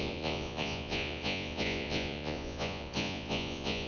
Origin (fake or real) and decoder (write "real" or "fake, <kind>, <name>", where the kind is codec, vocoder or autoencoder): fake, vocoder, Vocos